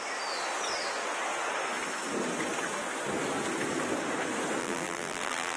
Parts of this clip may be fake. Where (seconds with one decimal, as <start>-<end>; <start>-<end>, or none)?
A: 4.6-5.6